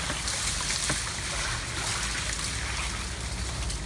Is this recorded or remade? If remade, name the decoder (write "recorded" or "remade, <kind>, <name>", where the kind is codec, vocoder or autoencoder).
recorded